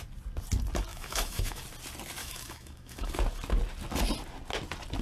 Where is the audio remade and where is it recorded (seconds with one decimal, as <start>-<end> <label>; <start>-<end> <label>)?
0.0-0.9 recorded; 0.9-1.6 remade; 1.6-2.2 recorded; 2.2-3.1 remade; 3.1-5.0 recorded